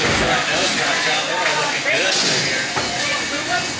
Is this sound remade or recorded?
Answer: remade